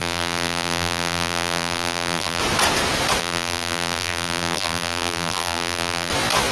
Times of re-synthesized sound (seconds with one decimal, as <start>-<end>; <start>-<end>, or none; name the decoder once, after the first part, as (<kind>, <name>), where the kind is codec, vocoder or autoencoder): 0.0-2.4 (vocoder, BigVGAN v2); 3.2-6.1